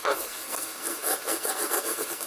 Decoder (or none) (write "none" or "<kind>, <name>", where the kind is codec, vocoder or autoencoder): codec, SNAC